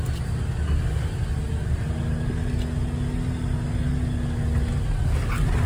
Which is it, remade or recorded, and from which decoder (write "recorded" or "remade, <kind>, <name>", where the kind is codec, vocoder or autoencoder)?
recorded